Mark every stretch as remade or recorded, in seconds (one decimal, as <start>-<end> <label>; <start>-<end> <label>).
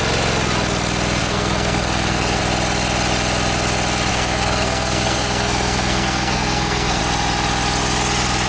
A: 0.0-1.2 recorded; 1.2-2.4 remade; 2.4-4.1 recorded; 4.1-7.0 remade; 7.0-8.5 recorded